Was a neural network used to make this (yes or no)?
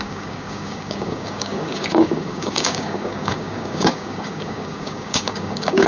yes